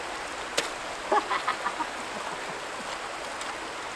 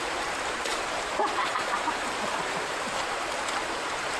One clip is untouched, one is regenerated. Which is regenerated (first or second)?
second